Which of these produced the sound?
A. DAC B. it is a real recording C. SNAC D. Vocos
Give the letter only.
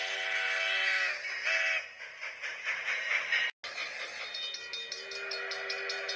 B